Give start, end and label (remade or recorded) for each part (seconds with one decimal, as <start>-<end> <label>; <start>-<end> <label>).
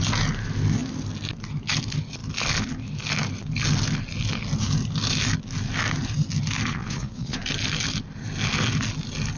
0.0-6.7 recorded; 6.7-7.4 remade; 7.4-9.4 recorded